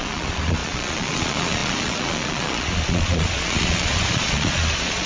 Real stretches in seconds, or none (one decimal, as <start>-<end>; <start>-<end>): none